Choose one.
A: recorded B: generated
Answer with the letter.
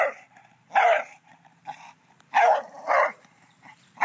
B